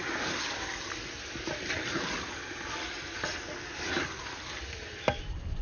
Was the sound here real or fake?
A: real